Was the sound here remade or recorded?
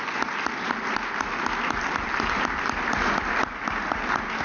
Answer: recorded